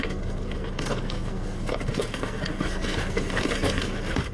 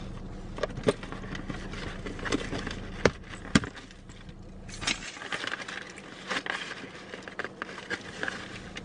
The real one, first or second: second